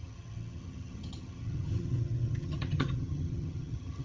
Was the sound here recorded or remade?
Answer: remade